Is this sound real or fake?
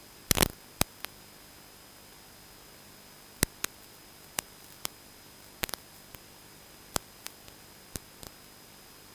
real